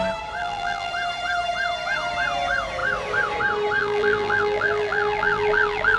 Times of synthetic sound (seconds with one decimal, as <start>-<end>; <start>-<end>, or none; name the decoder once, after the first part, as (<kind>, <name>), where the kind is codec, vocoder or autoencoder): 0.4-0.9 (vocoder, BigVGAN v2); 3.8-6.0